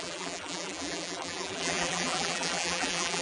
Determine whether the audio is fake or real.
fake